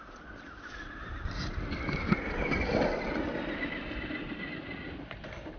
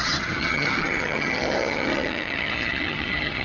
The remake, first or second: second